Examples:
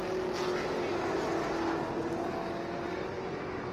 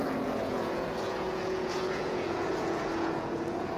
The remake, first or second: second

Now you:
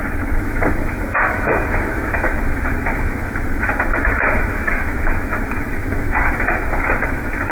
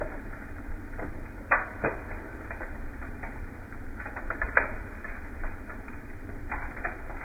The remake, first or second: first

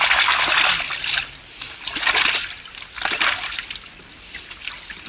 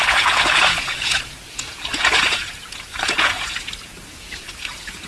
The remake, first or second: second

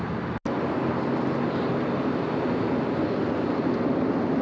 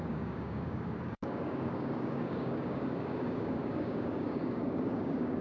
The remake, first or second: second